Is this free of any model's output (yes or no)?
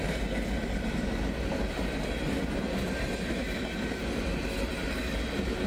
yes